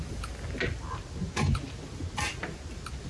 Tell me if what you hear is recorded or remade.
recorded